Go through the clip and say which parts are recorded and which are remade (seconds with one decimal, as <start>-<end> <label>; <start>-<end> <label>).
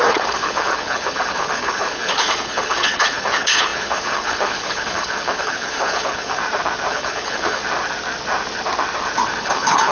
0.0-6.4 remade; 6.4-6.9 recorded; 6.9-7.6 remade; 7.6-9.4 recorded; 9.4-9.9 remade